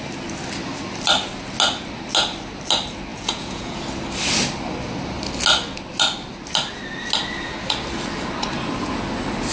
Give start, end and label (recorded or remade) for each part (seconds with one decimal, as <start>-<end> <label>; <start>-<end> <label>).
0.0-3.1 recorded; 3.1-3.8 remade; 3.8-9.5 recorded